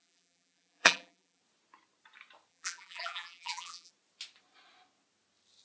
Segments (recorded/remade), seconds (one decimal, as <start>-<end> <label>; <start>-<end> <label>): 0.0-1.4 remade; 1.4-2.5 recorded; 2.5-3.9 remade; 3.9-5.6 recorded

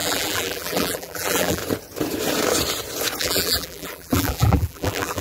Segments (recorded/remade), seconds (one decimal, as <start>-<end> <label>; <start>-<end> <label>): 0.0-1.6 remade; 1.6-3.2 recorded; 3.2-5.2 remade

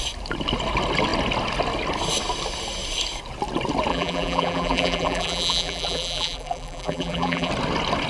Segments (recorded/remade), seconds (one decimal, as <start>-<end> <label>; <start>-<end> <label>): 0.0-3.9 recorded; 3.9-7.5 remade; 7.5-8.1 recorded

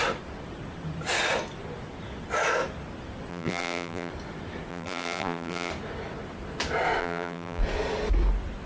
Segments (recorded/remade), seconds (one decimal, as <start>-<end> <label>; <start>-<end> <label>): 0.0-3.3 recorded; 3.3-4.1 remade; 4.1-4.7 recorded; 4.7-5.7 remade; 5.7-7.0 recorded; 7.0-7.6 remade; 7.6-8.7 recorded

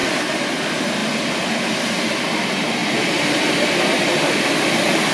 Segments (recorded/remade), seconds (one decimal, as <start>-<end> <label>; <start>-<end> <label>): 0.0-0.6 recorded; 0.6-1.0 remade; 1.0-1.8 recorded; 1.8-5.1 remade

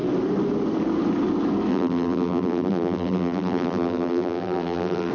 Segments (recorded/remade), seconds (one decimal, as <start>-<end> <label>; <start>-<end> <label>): 0.0-1.7 recorded; 1.7-5.1 remade

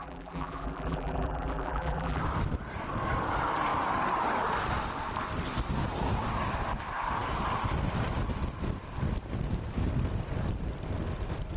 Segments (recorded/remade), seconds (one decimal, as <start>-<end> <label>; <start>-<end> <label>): 0.0-2.2 remade; 2.2-11.6 recorded